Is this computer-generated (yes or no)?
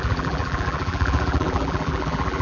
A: yes